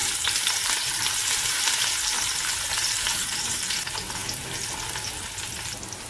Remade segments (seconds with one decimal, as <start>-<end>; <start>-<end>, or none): 0.0-3.7